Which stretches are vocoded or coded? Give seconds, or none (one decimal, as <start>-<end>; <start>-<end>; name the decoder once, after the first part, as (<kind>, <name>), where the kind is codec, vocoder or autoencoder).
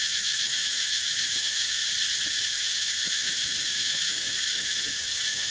0.0-1.8 (autoencoder, DAC-VAE); 2.5-5.5